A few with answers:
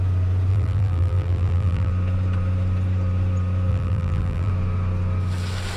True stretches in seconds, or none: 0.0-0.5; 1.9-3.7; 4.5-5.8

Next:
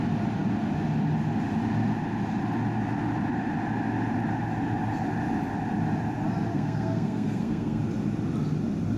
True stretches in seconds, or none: 0.0-6.5; 7.8-9.0

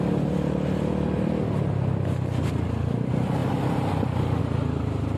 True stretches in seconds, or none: 0.0-5.2

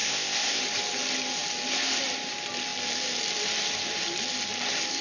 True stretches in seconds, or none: 0.6-5.0

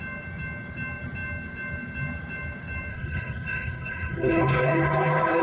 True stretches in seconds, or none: 0.0-2.9

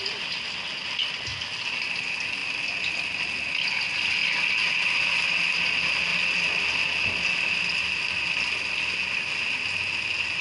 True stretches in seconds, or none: 0.0-10.4